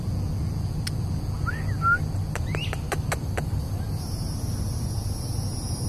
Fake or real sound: real